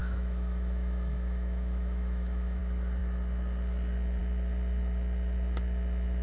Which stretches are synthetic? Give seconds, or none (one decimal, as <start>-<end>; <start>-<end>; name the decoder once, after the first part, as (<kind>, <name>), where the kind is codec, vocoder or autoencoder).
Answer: 0.0-2.6 (autoencoder, DAC-VAE)